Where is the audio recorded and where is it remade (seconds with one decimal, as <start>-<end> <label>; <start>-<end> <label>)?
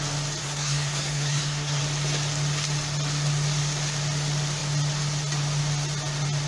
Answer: 0.0-0.4 recorded; 0.4-1.8 remade; 1.8-6.5 recorded